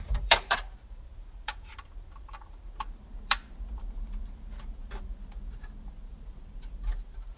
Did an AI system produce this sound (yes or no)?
yes